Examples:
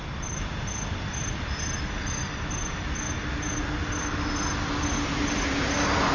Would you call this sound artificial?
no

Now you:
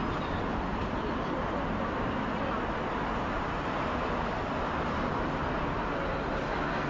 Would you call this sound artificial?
no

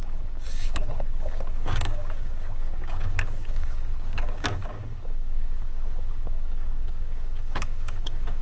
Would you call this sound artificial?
yes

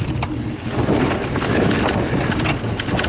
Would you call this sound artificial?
no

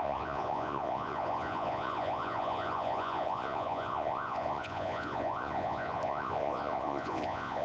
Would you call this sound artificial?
yes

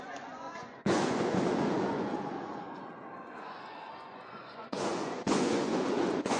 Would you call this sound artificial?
yes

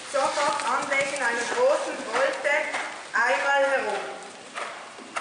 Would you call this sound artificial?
no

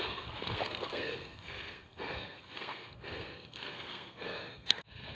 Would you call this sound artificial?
yes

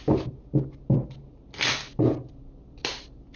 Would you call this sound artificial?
no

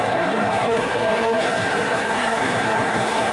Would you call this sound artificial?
yes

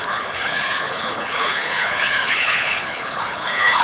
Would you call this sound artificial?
yes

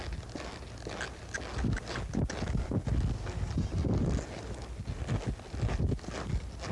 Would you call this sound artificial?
no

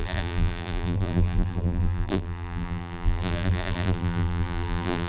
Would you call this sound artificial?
yes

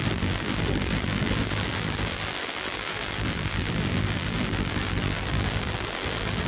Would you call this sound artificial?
yes